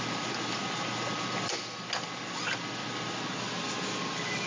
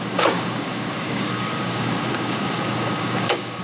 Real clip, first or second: first